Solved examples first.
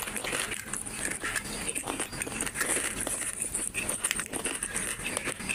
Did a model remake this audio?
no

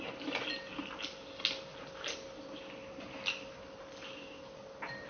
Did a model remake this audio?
no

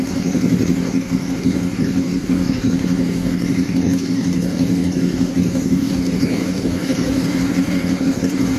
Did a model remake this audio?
yes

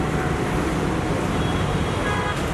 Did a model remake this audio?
no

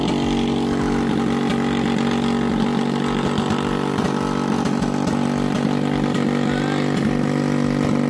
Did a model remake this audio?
no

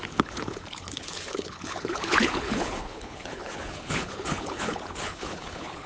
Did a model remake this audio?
yes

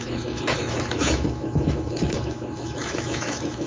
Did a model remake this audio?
yes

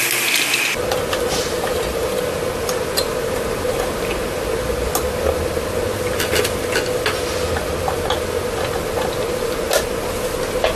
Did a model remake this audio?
no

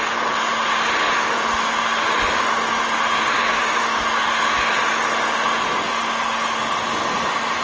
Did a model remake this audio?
no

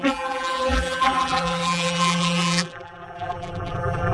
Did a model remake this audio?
yes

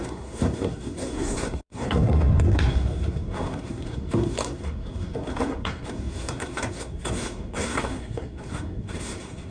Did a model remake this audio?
yes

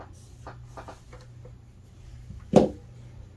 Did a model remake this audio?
no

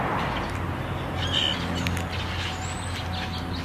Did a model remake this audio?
no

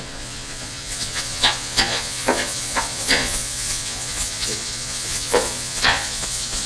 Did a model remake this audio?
yes